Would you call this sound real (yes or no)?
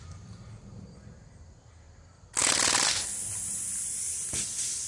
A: yes